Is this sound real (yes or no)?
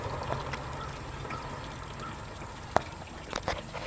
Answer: yes